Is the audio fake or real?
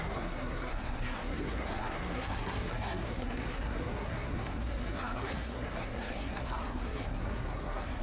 fake